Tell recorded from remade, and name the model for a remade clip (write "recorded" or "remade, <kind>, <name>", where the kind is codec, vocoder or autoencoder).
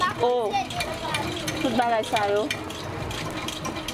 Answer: recorded